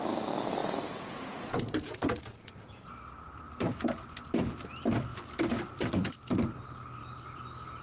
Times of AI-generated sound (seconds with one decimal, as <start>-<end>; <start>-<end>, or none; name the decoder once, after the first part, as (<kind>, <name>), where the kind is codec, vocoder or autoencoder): 0.6-2.8 (vocoder, Vocos)